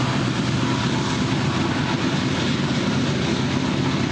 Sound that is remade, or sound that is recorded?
recorded